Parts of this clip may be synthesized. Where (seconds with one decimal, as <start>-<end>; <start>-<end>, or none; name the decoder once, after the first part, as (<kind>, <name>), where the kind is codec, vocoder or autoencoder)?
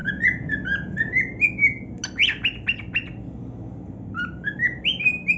0.0-1.2 (vocoder, Vocos)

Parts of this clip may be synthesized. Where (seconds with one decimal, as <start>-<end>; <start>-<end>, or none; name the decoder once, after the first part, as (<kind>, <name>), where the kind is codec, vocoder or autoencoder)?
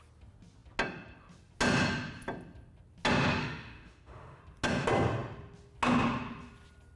3.4-4.4 (autoencoder, DAC-VAE)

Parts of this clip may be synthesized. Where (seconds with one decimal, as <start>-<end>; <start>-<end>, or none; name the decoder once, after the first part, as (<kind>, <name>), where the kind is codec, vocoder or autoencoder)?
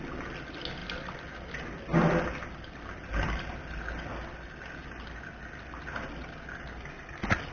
none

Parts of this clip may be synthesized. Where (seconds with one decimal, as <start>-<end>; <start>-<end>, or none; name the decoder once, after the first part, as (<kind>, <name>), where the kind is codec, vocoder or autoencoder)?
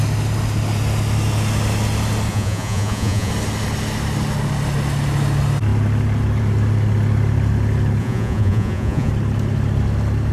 2.3-3.3 (vocoder, Vocos); 8.0-9.1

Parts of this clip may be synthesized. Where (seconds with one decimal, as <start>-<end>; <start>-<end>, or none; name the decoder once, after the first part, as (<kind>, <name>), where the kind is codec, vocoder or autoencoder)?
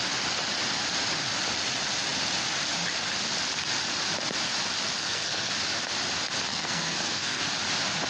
5.0-5.5 (codec, SNAC); 6.5-7.4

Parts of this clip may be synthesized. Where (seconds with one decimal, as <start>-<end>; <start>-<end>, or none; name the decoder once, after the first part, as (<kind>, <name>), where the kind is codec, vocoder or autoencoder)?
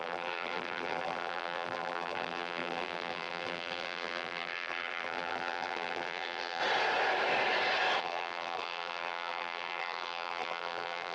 0.0-6.6 (vocoder, BigVGAN v2); 8.0-11.1